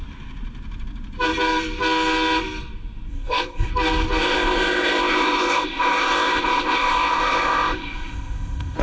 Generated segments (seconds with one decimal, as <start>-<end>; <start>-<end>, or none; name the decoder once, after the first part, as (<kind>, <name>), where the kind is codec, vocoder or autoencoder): 3.1-3.7 (codec, ZipCodec); 4.2-8.8